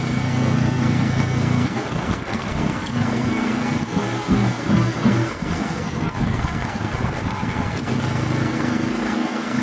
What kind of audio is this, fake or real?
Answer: fake